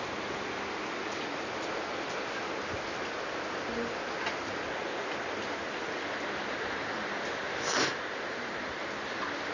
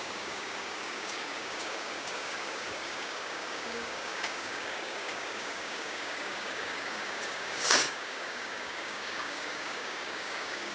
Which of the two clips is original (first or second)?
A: first